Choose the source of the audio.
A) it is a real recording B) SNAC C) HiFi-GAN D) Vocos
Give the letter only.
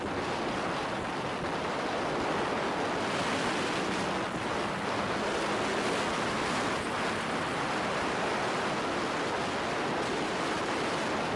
A